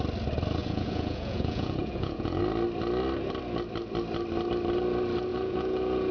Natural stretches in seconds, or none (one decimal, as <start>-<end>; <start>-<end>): 0.0-0.6; 2.4-5.3

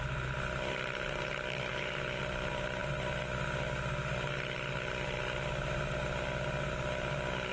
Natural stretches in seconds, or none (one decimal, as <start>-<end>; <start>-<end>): 0.0-1.7; 2.2-7.5

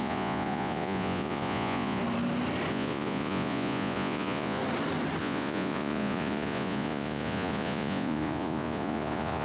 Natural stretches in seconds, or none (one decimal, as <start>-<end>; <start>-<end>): 2.0-2.7; 4.6-5.2

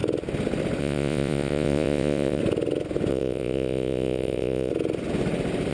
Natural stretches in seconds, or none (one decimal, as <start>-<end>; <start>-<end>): 0.0-0.8; 2.4-3.1; 4.7-5.7

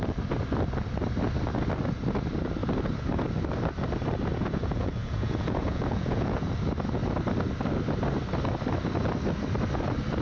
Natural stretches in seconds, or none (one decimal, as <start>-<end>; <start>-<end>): 0.0-4.3; 6.5-10.2